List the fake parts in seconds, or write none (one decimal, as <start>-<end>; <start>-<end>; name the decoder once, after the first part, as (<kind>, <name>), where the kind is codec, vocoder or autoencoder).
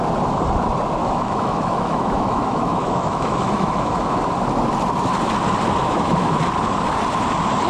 1.0-4.2 (autoencoder, DAC-VAE); 5.8-6.4